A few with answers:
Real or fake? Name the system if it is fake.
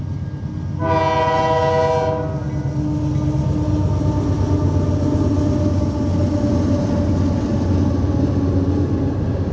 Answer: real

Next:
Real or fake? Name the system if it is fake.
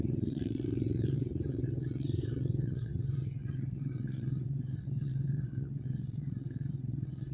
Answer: fake, vocoder, WaveNeXt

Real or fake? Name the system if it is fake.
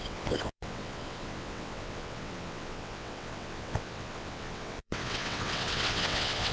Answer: fake, vocoder, WaveNeXt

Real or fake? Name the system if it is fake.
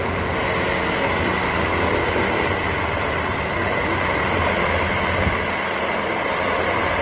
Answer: real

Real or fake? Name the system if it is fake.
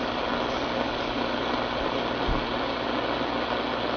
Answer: real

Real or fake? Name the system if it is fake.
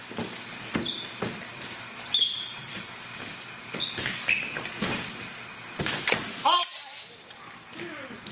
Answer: real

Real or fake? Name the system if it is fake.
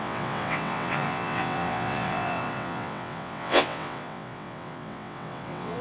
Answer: fake, vocoder, WaveNeXt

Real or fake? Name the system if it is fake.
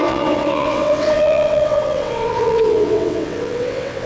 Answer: fake, vocoder, WaveNeXt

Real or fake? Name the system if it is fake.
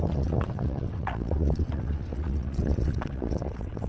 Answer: fake, vocoder, WaveNeXt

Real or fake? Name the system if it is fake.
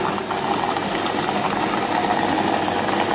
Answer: real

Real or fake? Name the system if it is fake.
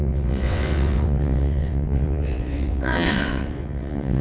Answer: fake, vocoder, WaveNeXt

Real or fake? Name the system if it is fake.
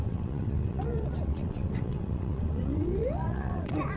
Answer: fake, vocoder, WaveNeXt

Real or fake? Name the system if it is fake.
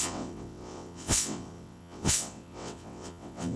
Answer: fake, vocoder, WaveNeXt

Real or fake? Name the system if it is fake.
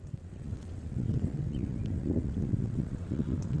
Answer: fake, vocoder, WaveNeXt